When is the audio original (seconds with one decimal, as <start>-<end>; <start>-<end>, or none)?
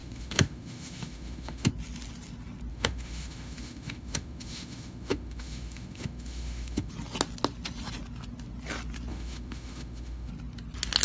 1.7-2.7; 6.9-9.1; 10.3-11.0